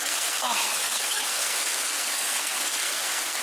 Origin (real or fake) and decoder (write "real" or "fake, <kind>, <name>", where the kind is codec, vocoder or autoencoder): fake, codec, SNAC